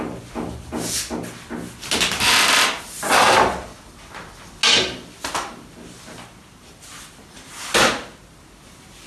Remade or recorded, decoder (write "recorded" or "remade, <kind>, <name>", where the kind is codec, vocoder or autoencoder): recorded